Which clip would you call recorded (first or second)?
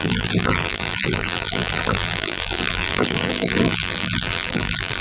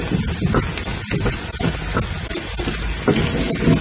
second